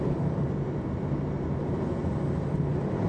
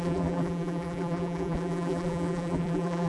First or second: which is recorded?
first